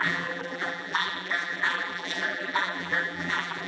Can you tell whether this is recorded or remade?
remade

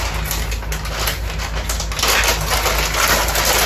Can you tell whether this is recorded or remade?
recorded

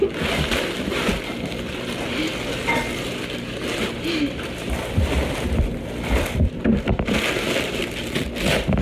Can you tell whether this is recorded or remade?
remade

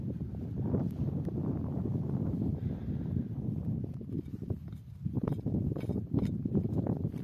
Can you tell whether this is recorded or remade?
remade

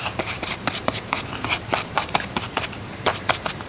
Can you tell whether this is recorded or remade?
remade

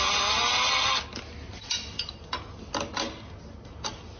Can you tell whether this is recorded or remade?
recorded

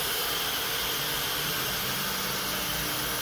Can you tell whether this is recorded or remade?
recorded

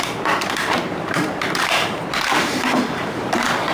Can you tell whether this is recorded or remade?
remade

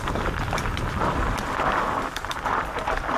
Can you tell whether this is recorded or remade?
remade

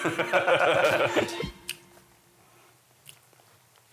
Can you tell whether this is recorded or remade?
remade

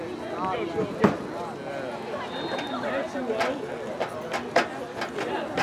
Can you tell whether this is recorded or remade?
recorded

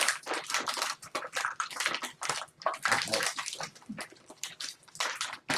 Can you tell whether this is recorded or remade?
remade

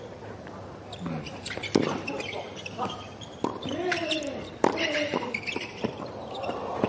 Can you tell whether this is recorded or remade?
remade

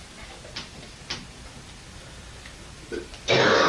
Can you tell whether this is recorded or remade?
recorded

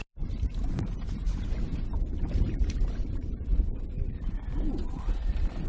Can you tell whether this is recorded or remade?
remade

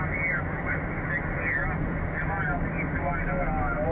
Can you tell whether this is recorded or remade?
recorded